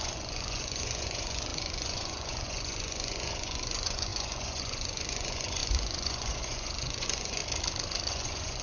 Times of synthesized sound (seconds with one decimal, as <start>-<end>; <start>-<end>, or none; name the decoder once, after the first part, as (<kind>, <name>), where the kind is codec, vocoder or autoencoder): 0.0-7.4 (vocoder, Vocos); 8.1-8.6